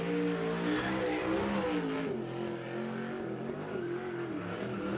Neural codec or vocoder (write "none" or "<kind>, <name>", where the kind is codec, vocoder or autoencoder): none